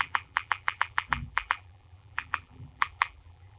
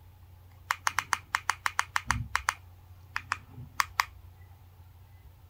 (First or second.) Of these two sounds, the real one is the second